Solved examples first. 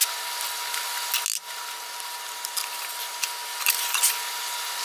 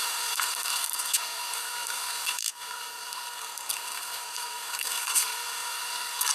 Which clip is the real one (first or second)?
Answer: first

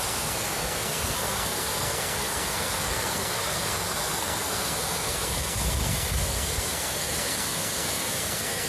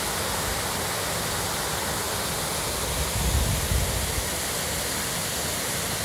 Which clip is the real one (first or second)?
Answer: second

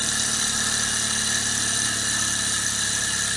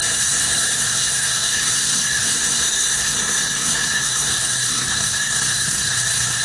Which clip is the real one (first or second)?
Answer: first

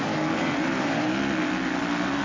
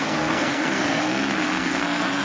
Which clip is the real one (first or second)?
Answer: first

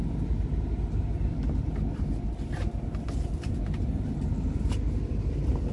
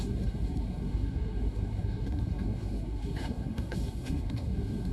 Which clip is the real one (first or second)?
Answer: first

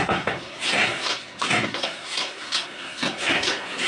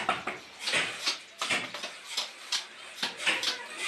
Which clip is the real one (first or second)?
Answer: second